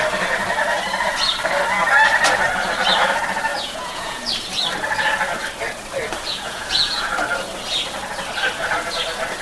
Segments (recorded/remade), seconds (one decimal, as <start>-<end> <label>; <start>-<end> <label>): 0.0-3.5 recorded; 3.5-4.2 remade; 4.2-6.3 recorded; 6.3-7.0 remade; 7.0-9.4 recorded